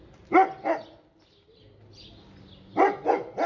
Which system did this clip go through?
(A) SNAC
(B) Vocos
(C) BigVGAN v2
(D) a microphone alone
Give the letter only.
D